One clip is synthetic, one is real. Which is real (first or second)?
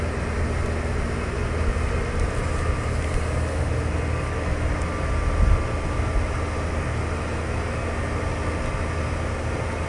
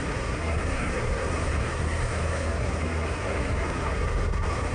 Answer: first